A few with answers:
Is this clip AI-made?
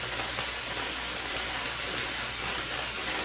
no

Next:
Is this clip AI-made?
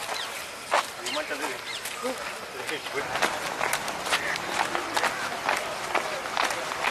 no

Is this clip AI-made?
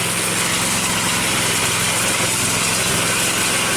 no